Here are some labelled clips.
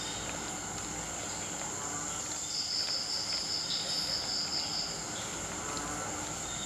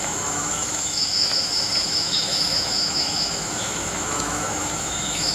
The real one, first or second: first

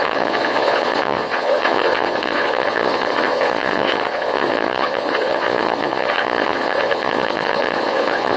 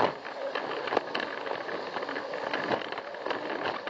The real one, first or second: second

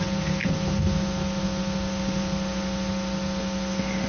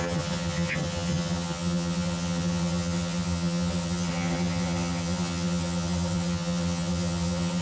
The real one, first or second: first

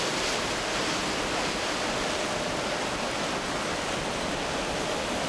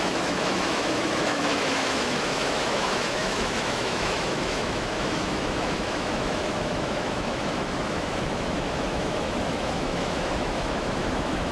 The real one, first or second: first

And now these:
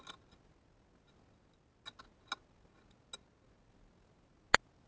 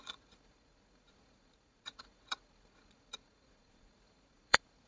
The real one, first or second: first